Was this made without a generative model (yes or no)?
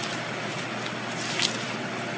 yes